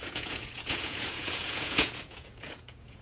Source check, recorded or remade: remade